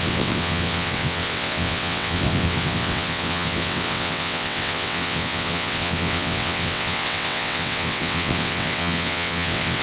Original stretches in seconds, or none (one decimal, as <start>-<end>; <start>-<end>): none